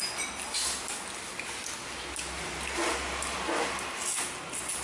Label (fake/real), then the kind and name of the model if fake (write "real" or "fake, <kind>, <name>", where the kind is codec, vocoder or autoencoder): real